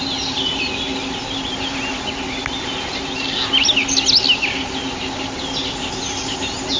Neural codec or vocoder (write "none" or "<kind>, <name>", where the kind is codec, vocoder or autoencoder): none